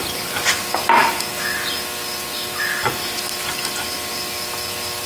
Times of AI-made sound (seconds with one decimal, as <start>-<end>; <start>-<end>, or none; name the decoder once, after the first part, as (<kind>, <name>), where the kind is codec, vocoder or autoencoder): none